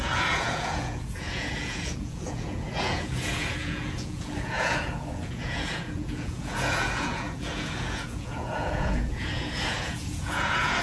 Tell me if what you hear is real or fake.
fake